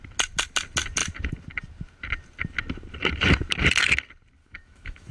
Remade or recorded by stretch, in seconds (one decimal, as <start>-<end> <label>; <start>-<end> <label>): 0.0-4.4 recorded; 4.4-5.1 remade